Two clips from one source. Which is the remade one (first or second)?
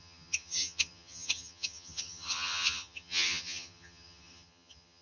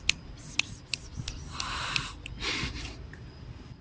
first